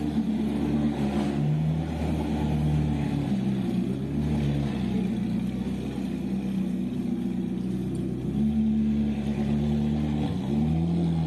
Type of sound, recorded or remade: recorded